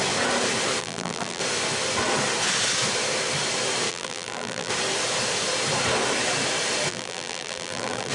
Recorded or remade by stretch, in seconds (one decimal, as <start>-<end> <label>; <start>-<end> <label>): 0.0-0.8 recorded; 0.8-1.4 remade; 1.4-3.9 recorded; 3.9-4.7 remade; 4.7-6.9 recorded; 6.9-8.1 remade